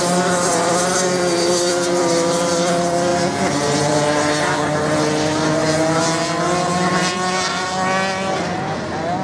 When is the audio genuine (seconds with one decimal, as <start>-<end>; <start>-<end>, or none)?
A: 0.0-9.2